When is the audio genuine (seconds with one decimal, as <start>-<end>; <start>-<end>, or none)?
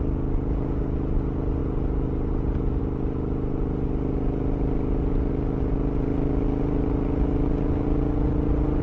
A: 0.0-8.8